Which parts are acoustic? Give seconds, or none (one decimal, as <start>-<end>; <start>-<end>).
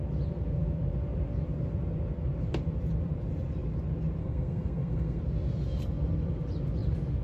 0.0-4.2; 5.2-7.2